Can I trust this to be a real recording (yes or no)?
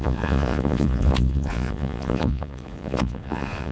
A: no